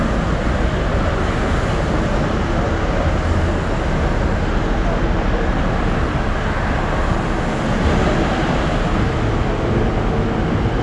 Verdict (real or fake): real